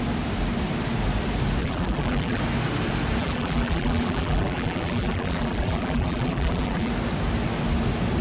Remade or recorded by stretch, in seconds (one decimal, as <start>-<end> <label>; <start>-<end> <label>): 0.0-1.6 recorded; 1.6-2.4 remade; 2.4-3.2 recorded; 3.2-6.9 remade; 6.9-8.2 recorded